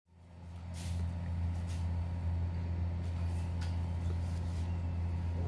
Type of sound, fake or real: real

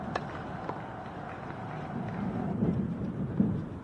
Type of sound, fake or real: real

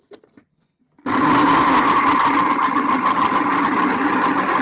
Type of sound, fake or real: real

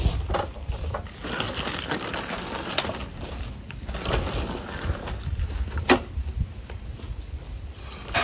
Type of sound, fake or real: real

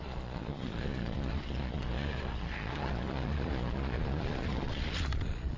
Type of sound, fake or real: fake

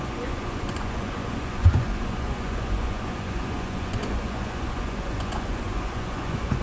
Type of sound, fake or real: fake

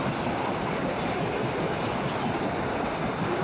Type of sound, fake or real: real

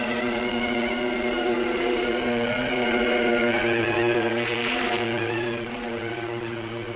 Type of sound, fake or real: fake